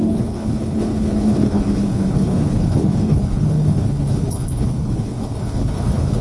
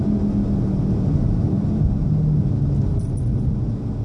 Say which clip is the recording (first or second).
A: second